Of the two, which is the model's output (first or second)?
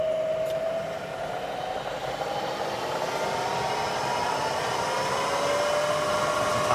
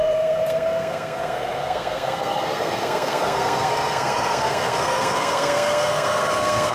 second